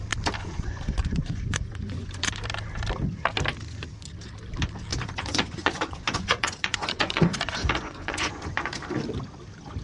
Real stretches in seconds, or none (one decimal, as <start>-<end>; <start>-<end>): 0.0-0.4; 2.3-4.9; 8.8-9.8